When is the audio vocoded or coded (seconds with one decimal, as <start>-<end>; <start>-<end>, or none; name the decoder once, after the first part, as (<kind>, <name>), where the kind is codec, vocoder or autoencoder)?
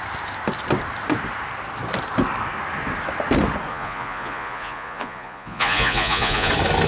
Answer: 3.7-6.5 (vocoder, Vocos)